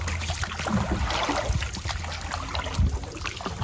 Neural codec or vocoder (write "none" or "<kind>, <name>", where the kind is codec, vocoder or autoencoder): none